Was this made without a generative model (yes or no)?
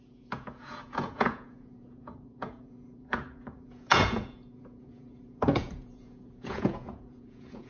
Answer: no